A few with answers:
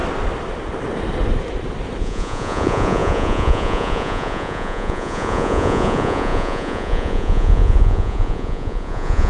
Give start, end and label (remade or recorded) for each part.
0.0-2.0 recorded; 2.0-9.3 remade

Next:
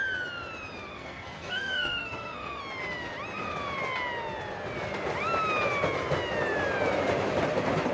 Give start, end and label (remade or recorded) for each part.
0.0-0.9 recorded; 0.9-2.6 remade; 2.6-7.9 recorded